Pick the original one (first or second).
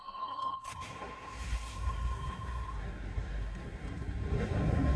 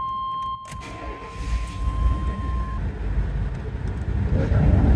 second